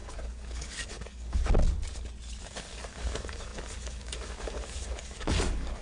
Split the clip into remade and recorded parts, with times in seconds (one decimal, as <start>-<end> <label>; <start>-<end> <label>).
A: 0.0-1.4 remade; 1.4-2.4 recorded; 2.4-5.8 remade